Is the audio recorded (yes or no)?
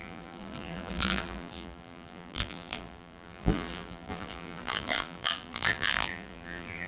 no